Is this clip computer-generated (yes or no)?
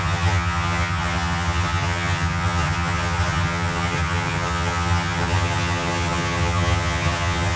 yes